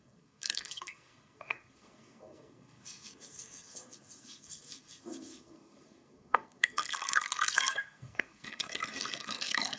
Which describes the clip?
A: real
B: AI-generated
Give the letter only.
B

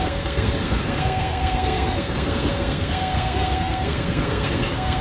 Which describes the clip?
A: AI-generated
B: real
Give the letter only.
A